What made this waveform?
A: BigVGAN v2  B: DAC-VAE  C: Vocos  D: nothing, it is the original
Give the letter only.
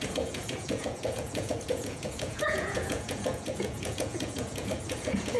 C